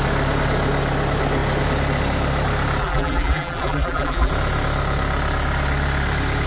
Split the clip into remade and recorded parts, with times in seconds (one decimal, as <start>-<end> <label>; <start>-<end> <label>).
0.0-2.8 recorded; 2.8-4.3 remade; 4.3-6.5 recorded